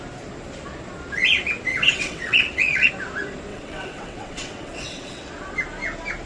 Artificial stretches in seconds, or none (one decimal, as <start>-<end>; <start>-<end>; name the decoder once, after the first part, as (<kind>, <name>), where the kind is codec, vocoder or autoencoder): 1.7-2.9 (vocoder, WaveNeXt); 3.5-5.3